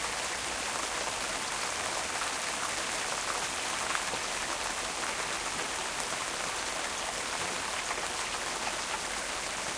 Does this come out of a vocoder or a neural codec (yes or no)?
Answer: no